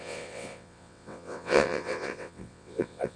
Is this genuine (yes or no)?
no